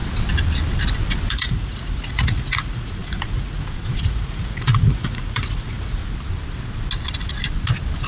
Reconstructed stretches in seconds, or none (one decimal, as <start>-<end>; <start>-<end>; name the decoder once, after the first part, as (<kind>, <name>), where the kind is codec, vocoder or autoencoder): 1.3-6.0 (vocoder, Vocos)

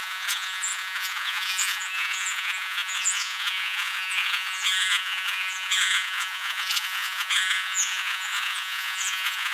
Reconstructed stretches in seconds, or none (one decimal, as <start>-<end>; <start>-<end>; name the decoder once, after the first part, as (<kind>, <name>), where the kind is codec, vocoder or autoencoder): 0.0-9.5 (vocoder, Vocos)